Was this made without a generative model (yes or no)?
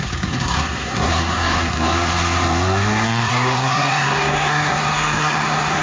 no